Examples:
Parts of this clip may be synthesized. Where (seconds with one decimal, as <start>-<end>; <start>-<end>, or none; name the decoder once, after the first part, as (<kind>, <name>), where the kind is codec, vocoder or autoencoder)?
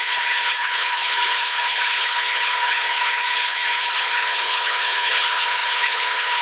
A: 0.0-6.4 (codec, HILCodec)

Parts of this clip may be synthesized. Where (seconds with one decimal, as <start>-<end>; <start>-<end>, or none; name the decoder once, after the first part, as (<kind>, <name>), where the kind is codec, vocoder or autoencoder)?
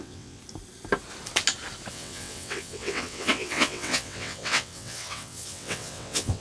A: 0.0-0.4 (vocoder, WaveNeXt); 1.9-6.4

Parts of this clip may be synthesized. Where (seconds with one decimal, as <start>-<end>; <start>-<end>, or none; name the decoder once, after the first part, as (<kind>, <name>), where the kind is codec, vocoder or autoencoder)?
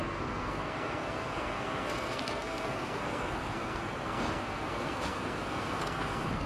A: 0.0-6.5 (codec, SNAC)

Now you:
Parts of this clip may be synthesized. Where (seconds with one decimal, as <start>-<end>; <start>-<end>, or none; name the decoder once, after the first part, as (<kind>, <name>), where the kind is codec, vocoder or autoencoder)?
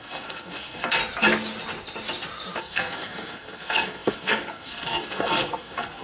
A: 0.0-1.0 (codec, SNAC); 2.6-6.0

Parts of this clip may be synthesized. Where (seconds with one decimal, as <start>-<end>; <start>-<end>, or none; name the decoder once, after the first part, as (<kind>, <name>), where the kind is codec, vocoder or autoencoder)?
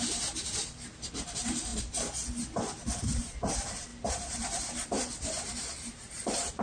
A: 0.0-1.7 (vocoder, BigVGAN v2); 3.0-6.6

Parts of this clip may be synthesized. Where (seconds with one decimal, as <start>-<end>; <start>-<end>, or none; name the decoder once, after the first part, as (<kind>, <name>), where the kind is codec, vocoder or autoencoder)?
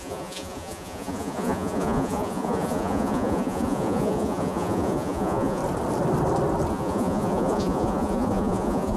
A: 0.0-5.6 (vocoder, Vocos); 6.7-9.0